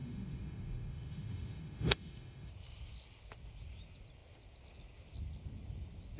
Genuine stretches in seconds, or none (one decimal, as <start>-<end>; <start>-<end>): 2.5-6.2